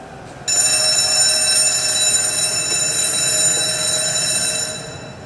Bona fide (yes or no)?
yes